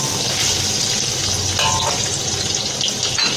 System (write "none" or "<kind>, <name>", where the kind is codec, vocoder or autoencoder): none